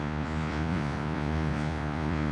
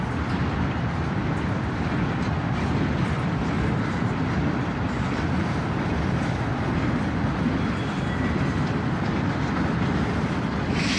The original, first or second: second